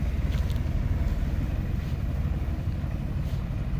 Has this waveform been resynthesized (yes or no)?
no